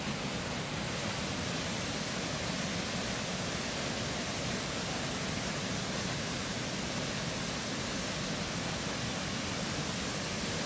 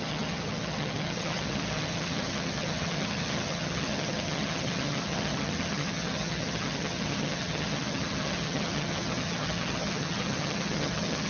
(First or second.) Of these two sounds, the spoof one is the second